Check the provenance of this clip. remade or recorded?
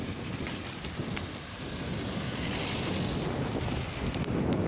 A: recorded